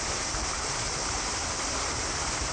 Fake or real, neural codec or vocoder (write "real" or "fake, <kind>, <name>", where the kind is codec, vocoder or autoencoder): real